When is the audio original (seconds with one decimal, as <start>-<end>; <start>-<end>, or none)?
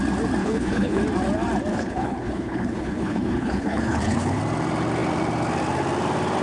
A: 0.0-0.4; 1.0-1.7; 4.4-6.4